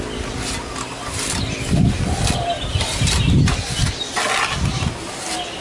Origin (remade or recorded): recorded